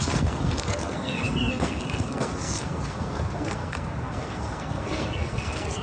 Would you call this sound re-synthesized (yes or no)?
yes